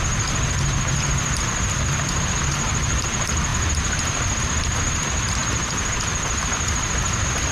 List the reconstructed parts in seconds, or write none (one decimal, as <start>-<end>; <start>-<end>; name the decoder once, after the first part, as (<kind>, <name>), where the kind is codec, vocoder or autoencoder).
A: none